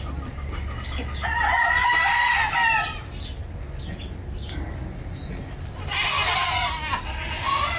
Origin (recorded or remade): recorded